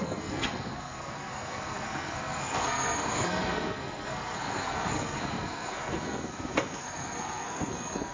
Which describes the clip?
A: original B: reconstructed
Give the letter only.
B